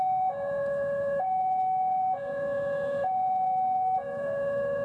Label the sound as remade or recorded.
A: remade